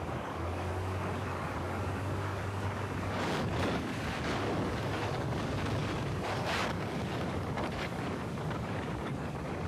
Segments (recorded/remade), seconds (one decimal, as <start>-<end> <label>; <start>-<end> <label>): 0.0-9.7 remade